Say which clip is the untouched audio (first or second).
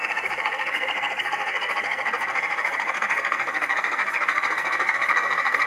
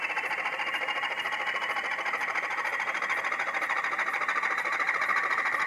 second